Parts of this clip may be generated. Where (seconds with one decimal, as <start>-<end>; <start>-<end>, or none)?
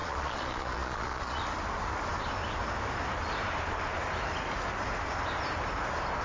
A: 0.0-1.4